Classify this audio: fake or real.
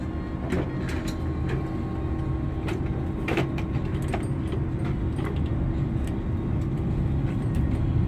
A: real